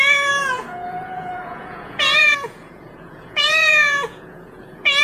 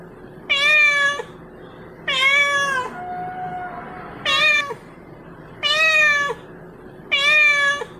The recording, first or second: second